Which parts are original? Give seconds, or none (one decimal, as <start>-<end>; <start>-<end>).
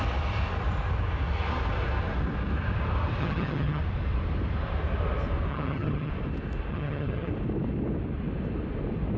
0.0-3.2; 3.8-5.5; 6.1-6.7; 7.3-9.2